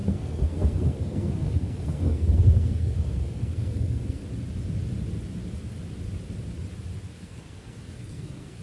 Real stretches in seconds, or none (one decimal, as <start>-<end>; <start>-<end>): 4.2-7.2